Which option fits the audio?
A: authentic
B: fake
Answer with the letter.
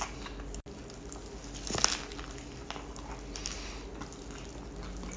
A